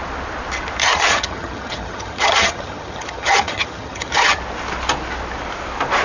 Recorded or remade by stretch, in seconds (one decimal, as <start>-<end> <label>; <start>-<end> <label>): 0.0-0.8 recorded; 0.8-4.4 remade; 4.4-6.0 recorded